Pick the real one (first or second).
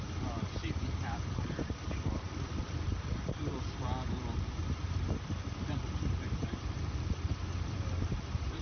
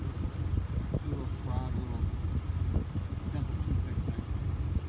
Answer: second